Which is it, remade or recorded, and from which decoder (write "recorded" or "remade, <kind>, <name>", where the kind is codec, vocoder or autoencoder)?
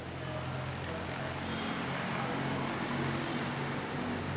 recorded